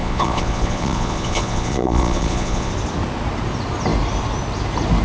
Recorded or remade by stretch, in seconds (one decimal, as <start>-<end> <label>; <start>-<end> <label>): 0.0-2.7 remade; 2.7-5.0 recorded